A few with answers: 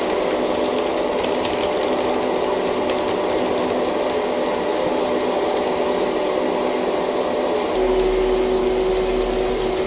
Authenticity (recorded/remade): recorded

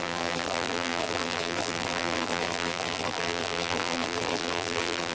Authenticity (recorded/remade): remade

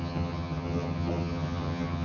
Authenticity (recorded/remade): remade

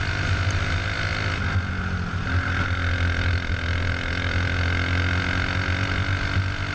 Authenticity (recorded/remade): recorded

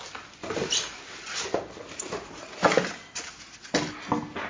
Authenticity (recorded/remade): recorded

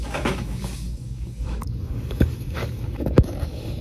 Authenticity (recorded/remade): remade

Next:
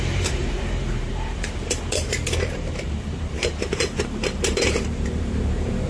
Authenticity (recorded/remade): remade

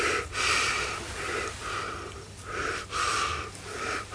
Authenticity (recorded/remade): recorded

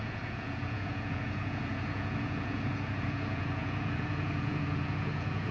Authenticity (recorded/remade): remade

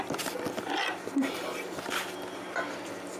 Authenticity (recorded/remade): recorded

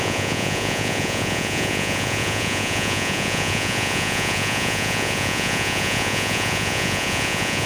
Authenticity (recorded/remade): remade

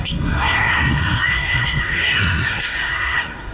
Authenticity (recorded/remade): remade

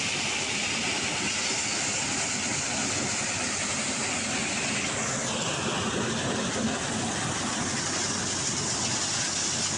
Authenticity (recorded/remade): recorded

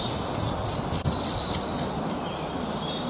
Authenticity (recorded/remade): recorded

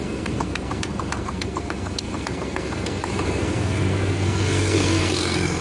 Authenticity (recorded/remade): remade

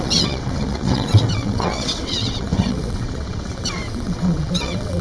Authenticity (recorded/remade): remade